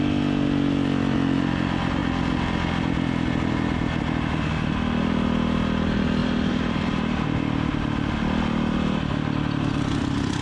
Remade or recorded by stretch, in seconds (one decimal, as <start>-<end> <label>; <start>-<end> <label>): 0.0-6.2 recorded; 6.2-7.7 remade; 7.7-10.4 recorded